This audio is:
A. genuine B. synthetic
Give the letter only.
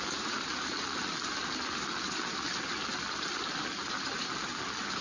A